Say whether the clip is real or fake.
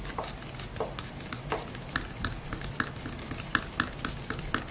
real